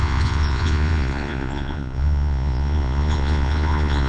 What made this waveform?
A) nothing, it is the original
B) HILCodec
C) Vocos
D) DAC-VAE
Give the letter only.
C